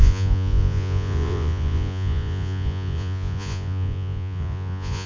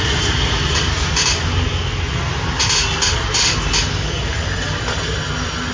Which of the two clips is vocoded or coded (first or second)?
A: first